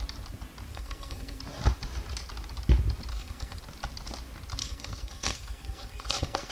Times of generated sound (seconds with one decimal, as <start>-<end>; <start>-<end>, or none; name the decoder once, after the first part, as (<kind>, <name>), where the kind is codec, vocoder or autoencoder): 0.7-1.4 (codec, SNAC); 3.1-3.6; 4.6-6.5